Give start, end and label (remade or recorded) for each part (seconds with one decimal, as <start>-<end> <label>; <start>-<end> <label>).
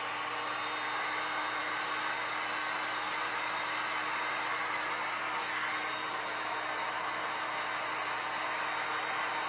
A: 0.0-9.5 recorded